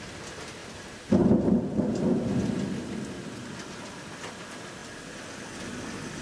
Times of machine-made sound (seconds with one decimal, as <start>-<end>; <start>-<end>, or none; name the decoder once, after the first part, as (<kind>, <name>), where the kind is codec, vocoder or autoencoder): none